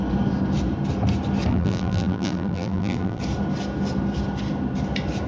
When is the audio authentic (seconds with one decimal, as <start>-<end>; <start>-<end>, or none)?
0.0-1.5; 3.2-5.3